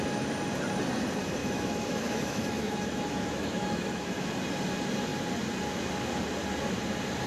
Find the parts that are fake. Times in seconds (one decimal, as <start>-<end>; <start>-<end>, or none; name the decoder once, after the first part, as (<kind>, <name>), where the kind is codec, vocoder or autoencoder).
1.4-4.3 (autoencoder, DAC-VAE)